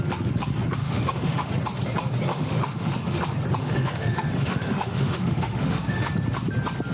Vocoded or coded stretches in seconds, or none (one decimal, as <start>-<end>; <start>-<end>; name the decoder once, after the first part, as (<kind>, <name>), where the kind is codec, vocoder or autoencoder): 0.8-1.5 (autoencoder, DAC-VAE); 2.3-3.2; 3.6-6.1